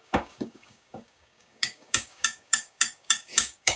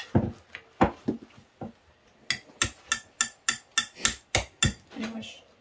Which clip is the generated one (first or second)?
first